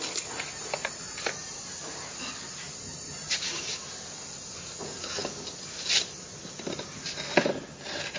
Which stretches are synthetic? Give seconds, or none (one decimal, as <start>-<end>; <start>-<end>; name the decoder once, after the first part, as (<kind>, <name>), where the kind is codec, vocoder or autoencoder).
none